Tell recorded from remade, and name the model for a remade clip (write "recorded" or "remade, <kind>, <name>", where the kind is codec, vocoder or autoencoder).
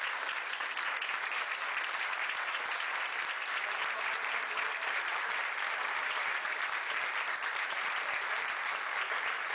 remade, vocoder, BigVGAN v2